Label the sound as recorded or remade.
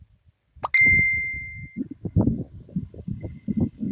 recorded